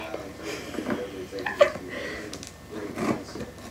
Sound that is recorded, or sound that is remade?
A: recorded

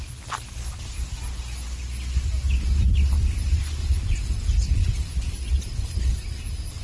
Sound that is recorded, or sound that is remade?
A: recorded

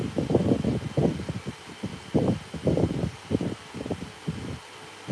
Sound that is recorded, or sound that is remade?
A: recorded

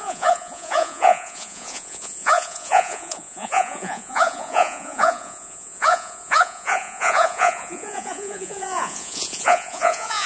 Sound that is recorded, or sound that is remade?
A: remade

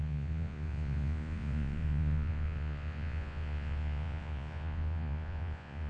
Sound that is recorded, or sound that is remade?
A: remade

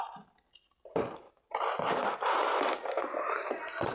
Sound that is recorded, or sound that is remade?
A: recorded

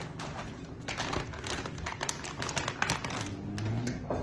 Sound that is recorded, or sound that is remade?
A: recorded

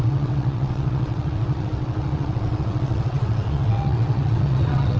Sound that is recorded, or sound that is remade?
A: remade